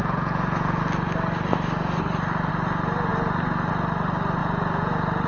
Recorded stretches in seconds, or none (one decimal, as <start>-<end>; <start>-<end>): 0.8-4.4